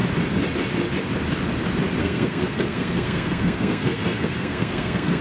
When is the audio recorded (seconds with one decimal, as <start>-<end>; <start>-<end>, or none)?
0.0-2.0